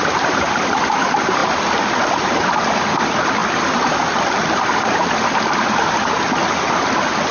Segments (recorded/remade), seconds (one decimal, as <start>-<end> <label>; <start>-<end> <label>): 0.0-7.3 recorded